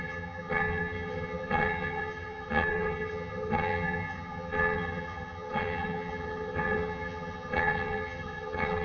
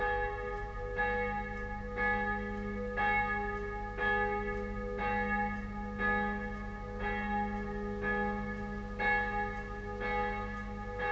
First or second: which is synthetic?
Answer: first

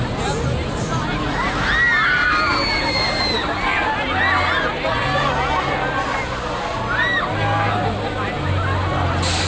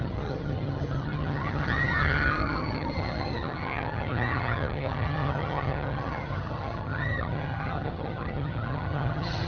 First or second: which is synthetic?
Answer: second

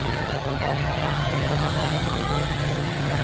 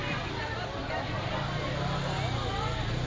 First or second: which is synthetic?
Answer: first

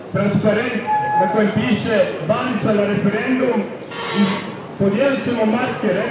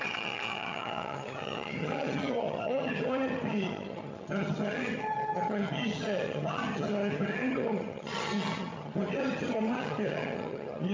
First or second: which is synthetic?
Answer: second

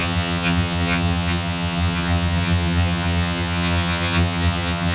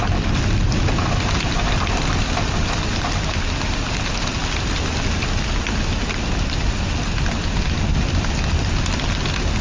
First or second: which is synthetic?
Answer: first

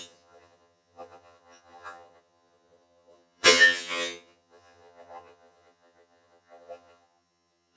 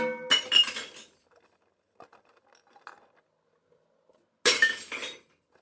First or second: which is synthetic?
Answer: first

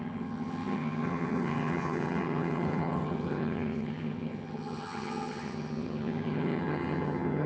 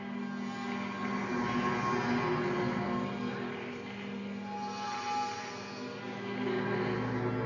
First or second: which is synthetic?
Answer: first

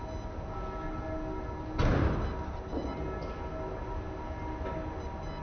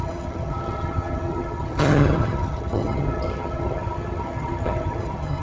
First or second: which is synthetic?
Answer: second